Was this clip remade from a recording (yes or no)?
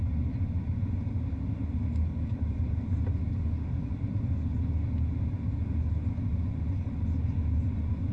no